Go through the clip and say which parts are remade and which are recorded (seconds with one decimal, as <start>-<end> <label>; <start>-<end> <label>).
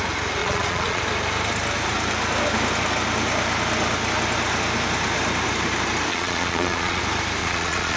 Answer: 0.0-0.4 recorded; 0.4-1.0 remade; 1.0-6.1 recorded; 6.1-7.0 remade; 7.0-7.4 recorded; 7.4-8.0 remade